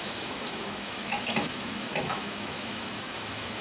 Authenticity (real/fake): fake